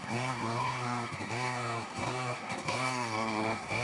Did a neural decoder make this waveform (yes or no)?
yes